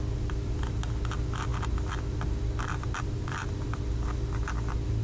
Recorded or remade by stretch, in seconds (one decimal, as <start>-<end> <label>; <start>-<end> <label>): 0.0-5.0 recorded